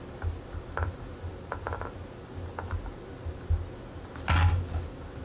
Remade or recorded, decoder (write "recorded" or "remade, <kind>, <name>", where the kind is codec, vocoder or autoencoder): recorded